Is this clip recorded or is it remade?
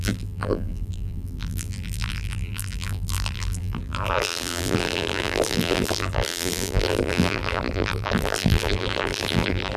remade